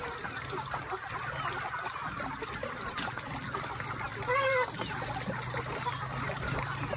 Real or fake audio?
real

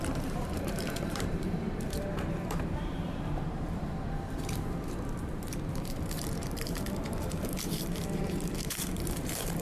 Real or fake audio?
fake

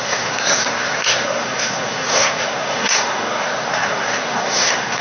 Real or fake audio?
fake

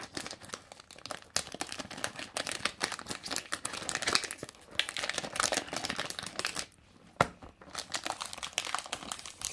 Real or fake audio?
real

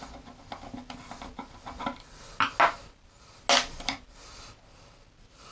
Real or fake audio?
real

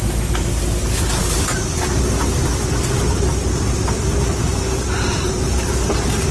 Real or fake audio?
real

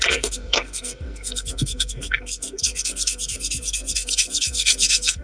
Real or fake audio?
fake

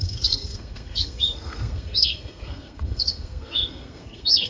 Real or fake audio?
fake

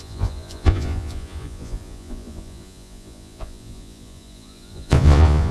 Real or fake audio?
fake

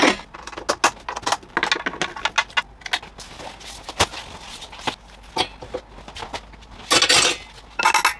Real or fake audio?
real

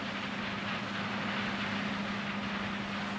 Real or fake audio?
real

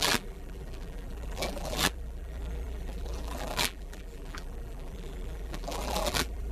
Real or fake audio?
fake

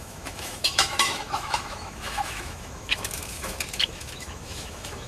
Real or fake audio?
fake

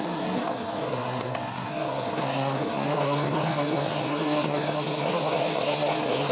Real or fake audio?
fake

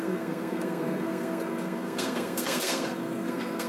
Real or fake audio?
fake